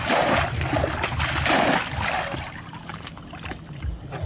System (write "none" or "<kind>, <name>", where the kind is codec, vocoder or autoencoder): none